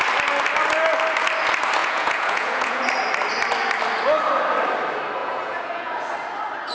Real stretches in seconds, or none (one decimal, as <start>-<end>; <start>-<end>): 0.0-1.8; 2.8-5.2; 5.9-6.7